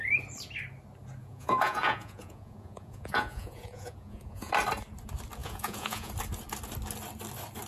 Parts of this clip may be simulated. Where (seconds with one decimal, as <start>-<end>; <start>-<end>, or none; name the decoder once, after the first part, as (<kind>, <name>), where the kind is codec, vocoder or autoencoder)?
1.2-4.5 (vocoder, Vocos); 5.4-6.1